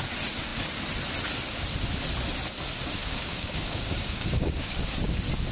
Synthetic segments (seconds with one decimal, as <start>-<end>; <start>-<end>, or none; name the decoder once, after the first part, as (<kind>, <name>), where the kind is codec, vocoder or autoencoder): 3.0-4.8 (codec, DAC)